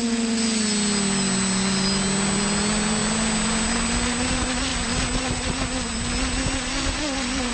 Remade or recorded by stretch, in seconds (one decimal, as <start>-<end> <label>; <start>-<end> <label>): 0.0-7.5 recorded